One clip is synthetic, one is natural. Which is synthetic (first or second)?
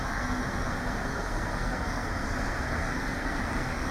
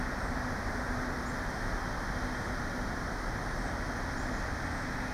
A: first